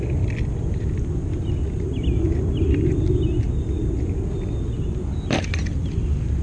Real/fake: real